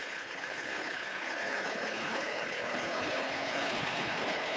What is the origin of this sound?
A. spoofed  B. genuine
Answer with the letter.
A